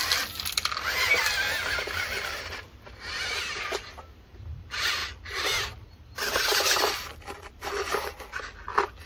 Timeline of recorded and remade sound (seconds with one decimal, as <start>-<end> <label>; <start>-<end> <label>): 0.0-9.1 recorded